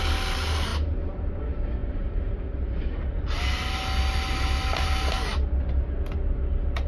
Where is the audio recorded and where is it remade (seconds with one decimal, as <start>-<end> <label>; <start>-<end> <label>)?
0.0-0.7 recorded; 0.7-1.3 remade; 1.3-1.8 recorded; 1.8-3.0 remade; 3.0-6.9 recorded